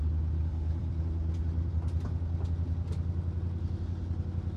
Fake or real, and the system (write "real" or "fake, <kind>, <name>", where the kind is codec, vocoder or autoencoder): real